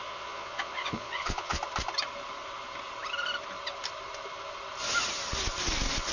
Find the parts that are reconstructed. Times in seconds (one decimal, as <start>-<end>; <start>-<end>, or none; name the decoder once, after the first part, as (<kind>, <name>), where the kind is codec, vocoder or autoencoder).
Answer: 0.0-1.6 (vocoder, Vocos)